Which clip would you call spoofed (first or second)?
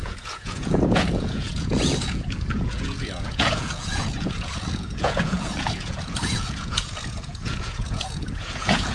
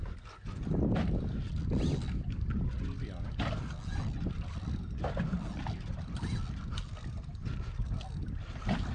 first